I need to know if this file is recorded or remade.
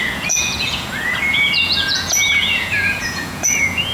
remade